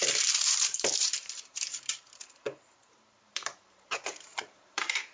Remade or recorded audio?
remade